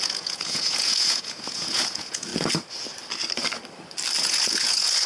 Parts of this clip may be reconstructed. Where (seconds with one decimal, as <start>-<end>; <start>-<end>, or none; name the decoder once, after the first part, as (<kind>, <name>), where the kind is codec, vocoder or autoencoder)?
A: 0.0-2.3 (vocoder, Vocos); 4.2-5.1